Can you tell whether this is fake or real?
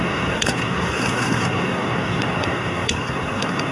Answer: fake